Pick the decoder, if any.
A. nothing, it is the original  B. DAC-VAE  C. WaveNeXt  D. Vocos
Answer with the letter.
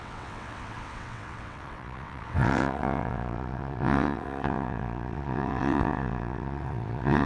C